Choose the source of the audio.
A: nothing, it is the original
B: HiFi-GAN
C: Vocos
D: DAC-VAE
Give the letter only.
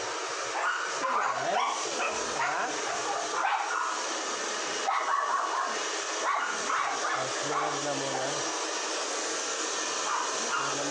A